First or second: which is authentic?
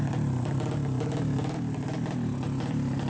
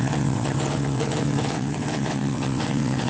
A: first